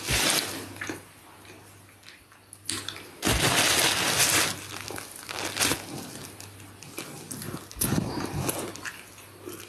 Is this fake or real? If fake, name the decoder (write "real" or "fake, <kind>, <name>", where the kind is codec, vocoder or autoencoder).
real